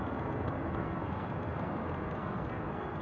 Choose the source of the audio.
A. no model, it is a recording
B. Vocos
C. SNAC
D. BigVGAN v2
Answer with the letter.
C